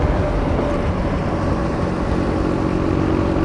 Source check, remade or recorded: recorded